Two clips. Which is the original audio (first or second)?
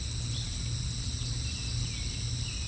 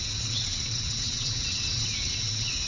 first